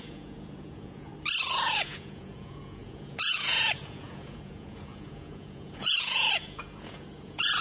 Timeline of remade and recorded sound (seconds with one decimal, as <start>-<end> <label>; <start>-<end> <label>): 0.0-1.1 remade; 1.1-1.7 recorded; 1.7-7.6 remade